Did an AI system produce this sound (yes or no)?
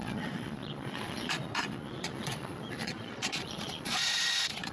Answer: yes